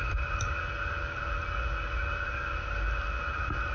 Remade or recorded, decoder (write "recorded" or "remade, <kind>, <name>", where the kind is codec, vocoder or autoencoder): recorded